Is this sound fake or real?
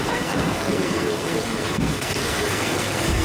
fake